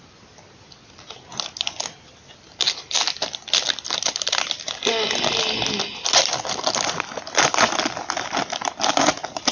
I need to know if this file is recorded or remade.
recorded